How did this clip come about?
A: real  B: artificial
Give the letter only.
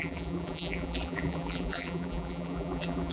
B